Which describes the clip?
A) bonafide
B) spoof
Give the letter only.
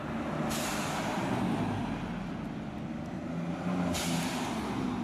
A